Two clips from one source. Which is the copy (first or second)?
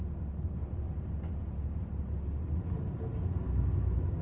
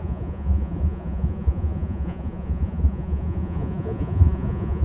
second